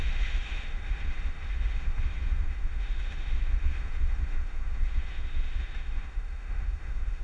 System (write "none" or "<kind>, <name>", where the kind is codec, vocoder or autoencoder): autoencoder, DAC-VAE